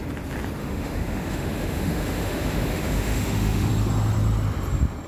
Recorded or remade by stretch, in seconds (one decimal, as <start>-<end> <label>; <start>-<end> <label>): 0.0-0.6 recorded; 0.6-3.7 remade; 3.7-5.1 recorded